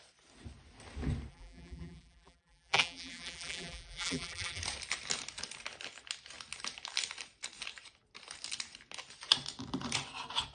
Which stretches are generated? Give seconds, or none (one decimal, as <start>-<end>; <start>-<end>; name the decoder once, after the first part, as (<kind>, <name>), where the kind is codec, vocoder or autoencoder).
1.3-4.6 (vocoder, BigVGAN v2)